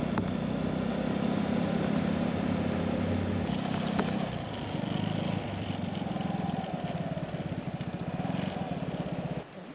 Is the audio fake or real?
real